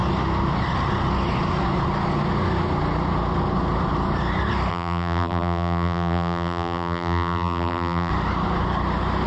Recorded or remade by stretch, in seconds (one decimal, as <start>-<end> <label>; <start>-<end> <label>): 0.0-4.7 recorded; 4.7-8.1 remade; 8.1-9.3 recorded